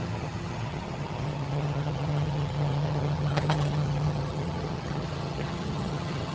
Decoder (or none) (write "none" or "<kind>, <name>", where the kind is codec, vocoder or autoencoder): vocoder, HiFi-GAN